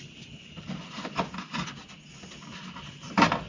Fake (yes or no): no